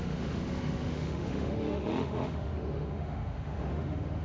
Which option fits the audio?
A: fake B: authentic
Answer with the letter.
A